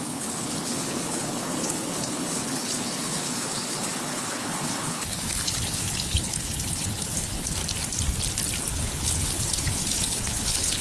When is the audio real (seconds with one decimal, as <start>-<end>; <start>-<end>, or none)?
7.6-8.7